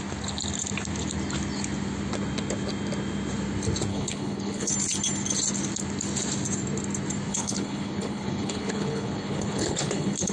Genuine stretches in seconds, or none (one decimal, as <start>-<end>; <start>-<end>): 0.0-3.9; 4.7-7.3